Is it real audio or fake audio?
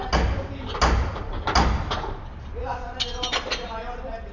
real